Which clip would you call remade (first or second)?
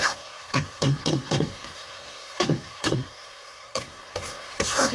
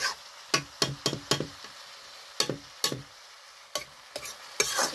first